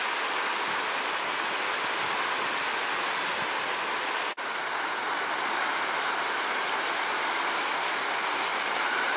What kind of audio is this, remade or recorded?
remade